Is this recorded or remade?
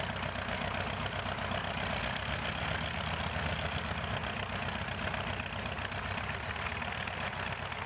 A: recorded